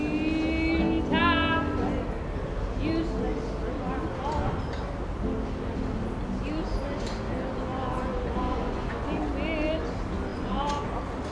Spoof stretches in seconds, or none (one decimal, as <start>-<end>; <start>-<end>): 7.7-9.2; 10.3-10.8